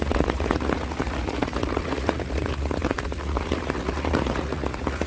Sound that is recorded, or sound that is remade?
remade